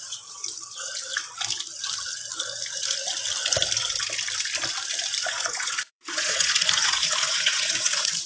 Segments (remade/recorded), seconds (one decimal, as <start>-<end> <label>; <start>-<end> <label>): 0.0-0.4 remade; 0.4-5.2 recorded; 5.2-8.3 remade